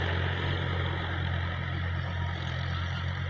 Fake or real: real